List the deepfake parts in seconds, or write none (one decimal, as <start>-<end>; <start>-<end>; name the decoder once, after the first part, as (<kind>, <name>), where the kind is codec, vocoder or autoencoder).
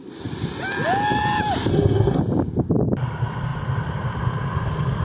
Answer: 1.7-2.2 (codec, SNAC)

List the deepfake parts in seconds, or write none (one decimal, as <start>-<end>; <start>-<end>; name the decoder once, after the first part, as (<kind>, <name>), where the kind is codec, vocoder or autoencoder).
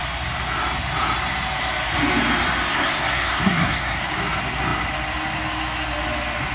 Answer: 2.7-4.0 (codec, SNAC)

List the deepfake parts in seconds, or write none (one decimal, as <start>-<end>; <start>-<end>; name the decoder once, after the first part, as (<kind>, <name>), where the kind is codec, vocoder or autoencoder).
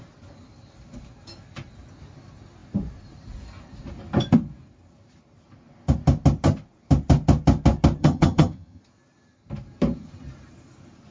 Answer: 8.0-8.8 (vocoder, HiFi-GAN)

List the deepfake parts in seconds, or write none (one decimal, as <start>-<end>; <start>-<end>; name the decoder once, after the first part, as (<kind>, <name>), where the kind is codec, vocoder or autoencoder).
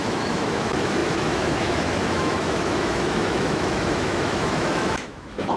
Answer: 0.0-5.6 (autoencoder, DAC-VAE)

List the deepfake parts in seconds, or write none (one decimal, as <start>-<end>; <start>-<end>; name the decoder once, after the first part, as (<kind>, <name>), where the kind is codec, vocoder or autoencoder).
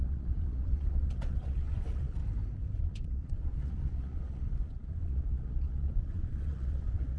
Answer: 0.0-2.2 (vocoder, Vocos); 2.8-7.2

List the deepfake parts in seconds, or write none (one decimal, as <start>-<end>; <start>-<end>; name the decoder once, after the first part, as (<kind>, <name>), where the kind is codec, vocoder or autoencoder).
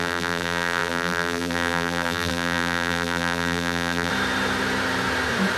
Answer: 0.0-4.1 (vocoder, BigVGAN v2)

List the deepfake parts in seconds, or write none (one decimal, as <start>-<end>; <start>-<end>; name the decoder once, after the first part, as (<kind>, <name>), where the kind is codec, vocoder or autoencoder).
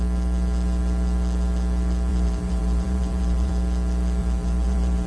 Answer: 2.1-3.5 (vocoder, BigVGAN v2); 4.2-5.1